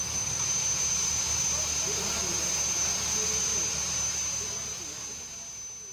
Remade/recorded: recorded